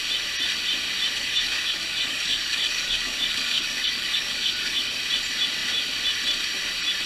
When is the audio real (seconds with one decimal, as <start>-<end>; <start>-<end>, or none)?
0.0-1.2; 5.0-7.1